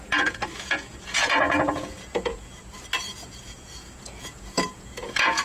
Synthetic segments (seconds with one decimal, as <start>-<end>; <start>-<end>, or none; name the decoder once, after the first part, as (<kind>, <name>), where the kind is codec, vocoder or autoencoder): 0.0-2.6 (vocoder, Vocos); 3.1-5.4